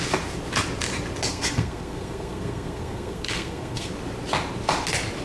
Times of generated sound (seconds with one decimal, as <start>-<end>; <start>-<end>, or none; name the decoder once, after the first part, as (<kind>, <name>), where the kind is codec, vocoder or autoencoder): 1.3-3.9 (codec, SNAC)

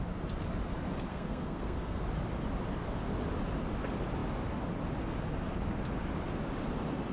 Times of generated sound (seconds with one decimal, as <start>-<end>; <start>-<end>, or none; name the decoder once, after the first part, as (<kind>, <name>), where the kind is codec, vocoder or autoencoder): 1.1-2.0 (codec, SNAC)